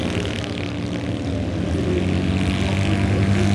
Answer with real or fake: real